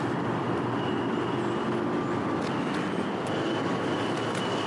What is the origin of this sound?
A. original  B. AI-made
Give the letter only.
A